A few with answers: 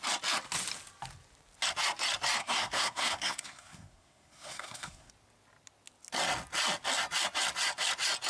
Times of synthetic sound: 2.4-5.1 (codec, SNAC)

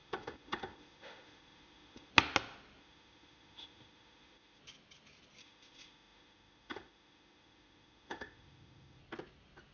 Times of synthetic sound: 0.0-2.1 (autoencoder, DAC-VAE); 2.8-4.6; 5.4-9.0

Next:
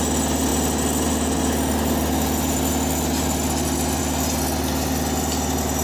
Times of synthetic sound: none

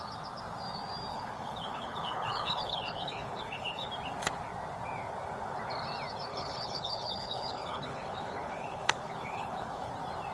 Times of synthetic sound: 1.1-3.9 (codec, HILCodec); 6.3-9.9

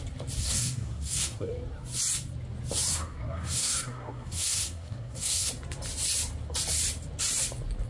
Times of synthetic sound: 0.4-1.5 (codec, SNAC); 2.9-5.5